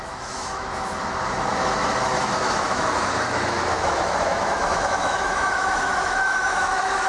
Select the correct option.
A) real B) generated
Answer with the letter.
B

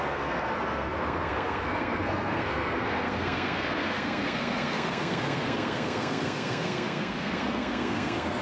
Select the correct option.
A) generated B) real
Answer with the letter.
A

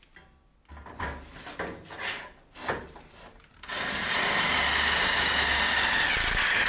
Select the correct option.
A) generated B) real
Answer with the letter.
B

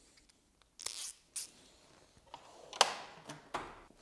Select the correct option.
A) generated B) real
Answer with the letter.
B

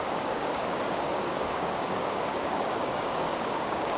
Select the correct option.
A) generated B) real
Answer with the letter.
A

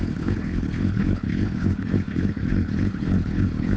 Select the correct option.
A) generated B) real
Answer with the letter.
A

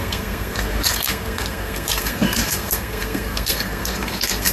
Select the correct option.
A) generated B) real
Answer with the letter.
A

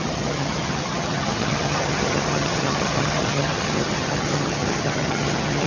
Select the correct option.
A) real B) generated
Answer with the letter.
B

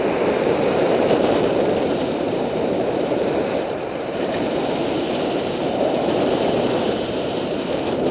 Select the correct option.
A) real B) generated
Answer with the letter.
B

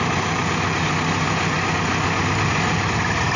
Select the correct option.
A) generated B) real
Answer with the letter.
B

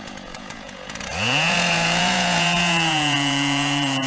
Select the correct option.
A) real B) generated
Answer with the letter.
B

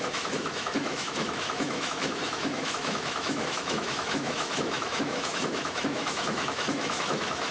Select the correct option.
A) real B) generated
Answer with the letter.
B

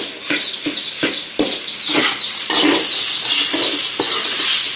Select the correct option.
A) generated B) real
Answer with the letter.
B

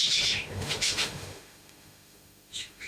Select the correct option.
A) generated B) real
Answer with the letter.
A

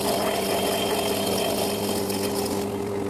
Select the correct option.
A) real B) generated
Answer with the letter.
A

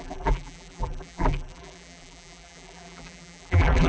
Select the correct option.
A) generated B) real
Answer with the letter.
A